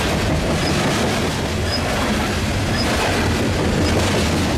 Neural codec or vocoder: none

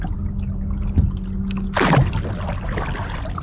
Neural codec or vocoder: none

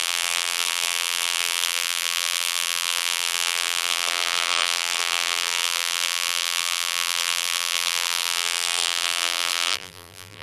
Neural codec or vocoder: vocoder, BigVGAN v2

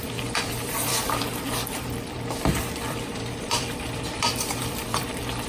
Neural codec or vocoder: vocoder, BigVGAN v2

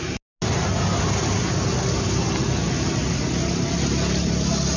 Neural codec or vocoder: none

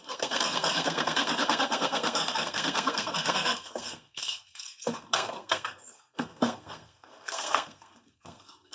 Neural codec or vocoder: codec, SNAC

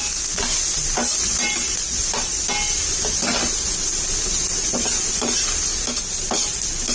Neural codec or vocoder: none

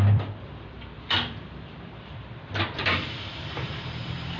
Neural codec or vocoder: vocoder, BigVGAN v2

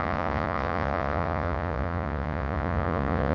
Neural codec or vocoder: vocoder, Vocos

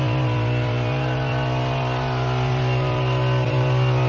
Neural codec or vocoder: none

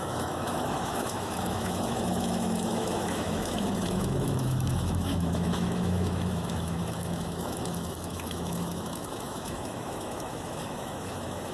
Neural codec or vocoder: autoencoder, DAC-VAE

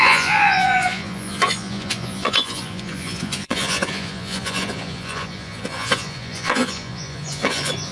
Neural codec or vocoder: vocoder, Vocos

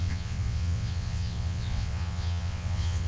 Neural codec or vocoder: vocoder, WaveNeXt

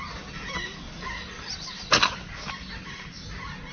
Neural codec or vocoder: none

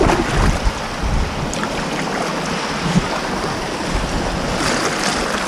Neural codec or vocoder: none